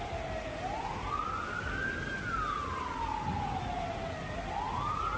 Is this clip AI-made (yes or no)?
no